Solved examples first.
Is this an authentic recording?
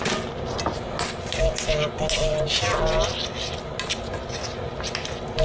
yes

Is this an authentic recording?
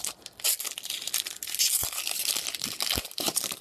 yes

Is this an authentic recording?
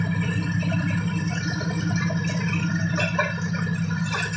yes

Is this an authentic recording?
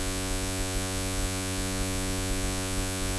no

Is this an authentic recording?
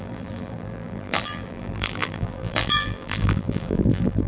no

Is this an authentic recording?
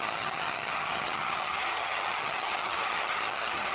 no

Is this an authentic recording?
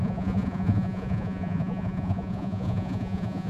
no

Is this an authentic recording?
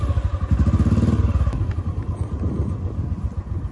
yes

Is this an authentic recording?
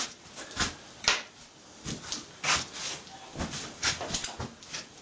yes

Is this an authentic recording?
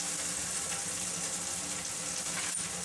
yes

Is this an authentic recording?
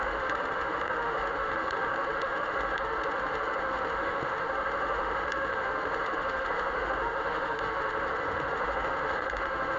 no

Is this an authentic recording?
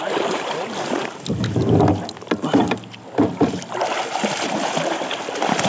yes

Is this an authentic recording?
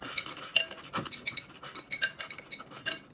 yes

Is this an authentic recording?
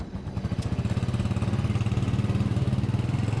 yes